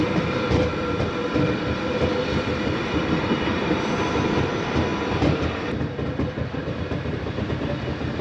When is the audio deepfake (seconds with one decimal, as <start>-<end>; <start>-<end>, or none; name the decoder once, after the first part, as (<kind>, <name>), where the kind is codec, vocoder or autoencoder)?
1.2-3.7 (vocoder, BigVGAN v2); 4.9-7.5